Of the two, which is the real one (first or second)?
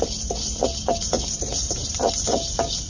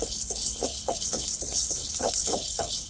first